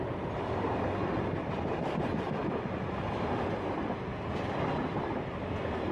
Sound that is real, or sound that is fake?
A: real